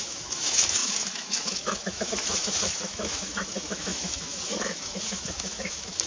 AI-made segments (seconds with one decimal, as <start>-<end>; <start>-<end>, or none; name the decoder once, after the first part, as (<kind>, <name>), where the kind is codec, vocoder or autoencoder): 0.0-6.1 (autoencoder, DAC-VAE)